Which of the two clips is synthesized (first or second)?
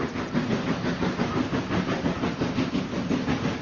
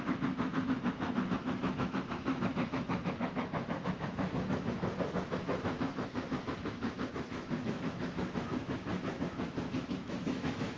second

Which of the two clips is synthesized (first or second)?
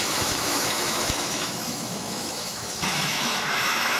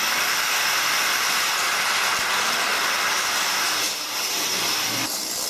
first